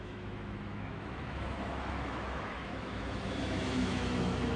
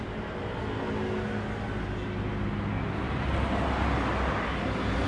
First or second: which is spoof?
first